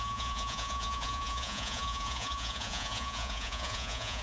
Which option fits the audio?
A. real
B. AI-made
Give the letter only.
B